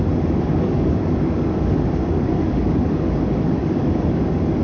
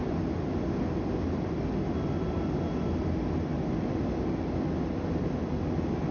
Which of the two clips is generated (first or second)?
first